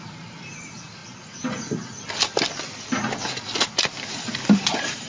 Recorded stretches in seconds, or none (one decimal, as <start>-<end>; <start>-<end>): 1.0-4.1